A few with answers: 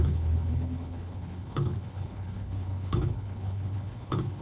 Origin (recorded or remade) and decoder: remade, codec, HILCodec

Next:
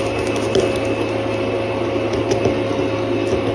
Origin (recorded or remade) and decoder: recorded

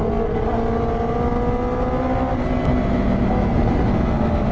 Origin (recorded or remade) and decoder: recorded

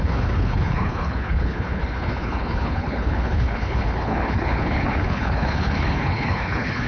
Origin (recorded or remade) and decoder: remade, codec, HILCodec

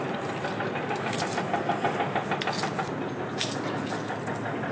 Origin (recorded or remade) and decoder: recorded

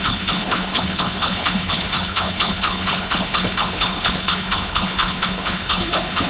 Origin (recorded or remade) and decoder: remade, codec, HILCodec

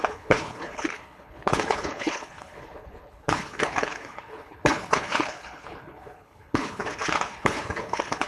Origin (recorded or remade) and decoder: remade, codec, HILCodec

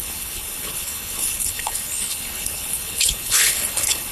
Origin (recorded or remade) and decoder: remade, codec, HILCodec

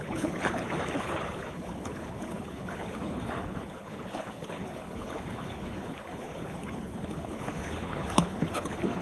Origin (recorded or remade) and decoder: remade, codec, HILCodec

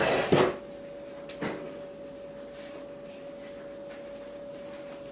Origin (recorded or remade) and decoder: recorded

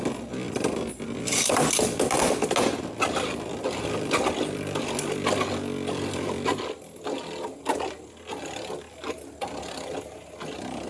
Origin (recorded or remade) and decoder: recorded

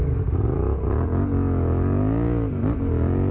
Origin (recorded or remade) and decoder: recorded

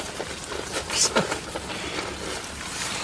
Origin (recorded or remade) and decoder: recorded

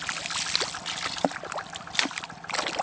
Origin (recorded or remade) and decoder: recorded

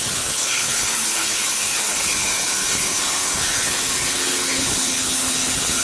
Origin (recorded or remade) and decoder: remade, codec, HILCodec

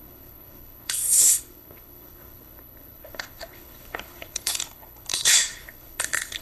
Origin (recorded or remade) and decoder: remade, codec, HILCodec